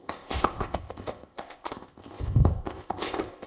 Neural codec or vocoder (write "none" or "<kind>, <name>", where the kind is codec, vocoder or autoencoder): codec, ZipCodec